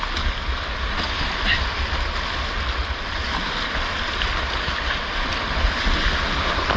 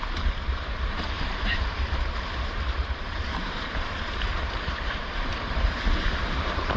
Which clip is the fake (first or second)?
second